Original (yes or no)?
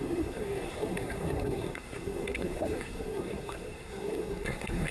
no